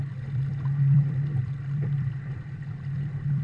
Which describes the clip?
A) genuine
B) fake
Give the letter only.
B